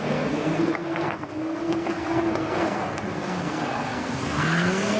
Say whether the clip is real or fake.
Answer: fake